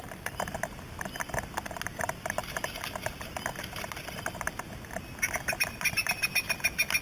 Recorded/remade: recorded